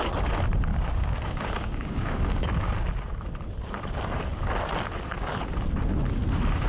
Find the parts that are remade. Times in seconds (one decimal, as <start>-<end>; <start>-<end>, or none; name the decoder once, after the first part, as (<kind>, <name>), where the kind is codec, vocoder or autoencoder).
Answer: 0.7-2.7 (codec, DAC)